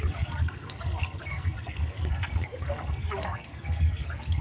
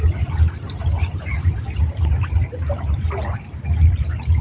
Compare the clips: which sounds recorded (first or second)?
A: second